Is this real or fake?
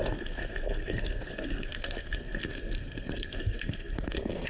fake